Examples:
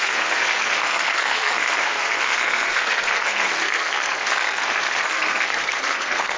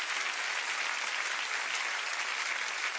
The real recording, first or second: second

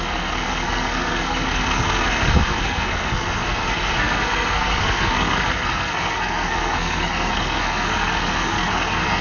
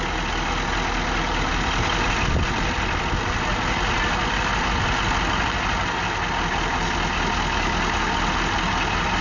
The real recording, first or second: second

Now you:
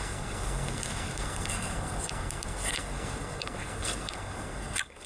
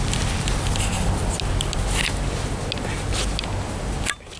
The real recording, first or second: second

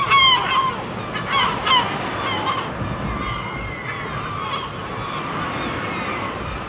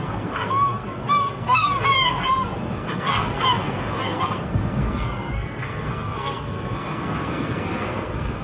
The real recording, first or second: first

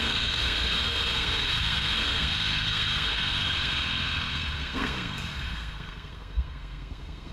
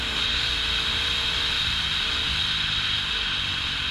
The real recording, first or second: second